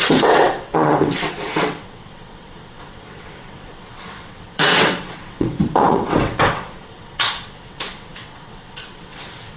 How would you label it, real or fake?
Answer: fake